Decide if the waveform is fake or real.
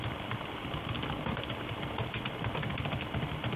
real